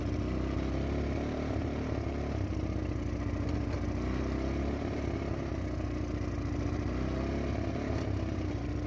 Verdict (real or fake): real